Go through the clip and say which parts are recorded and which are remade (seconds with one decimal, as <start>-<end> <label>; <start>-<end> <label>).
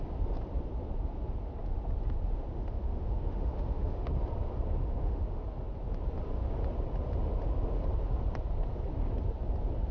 0.0-2.5 recorded; 2.5-4.1 remade; 4.1-4.8 recorded; 4.8-5.4 remade; 5.4-9.9 recorded